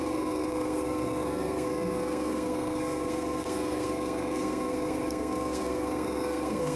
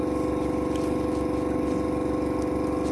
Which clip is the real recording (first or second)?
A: second